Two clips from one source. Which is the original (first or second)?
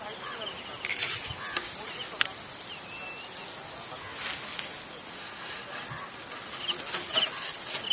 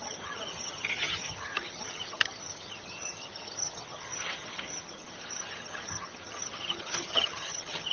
first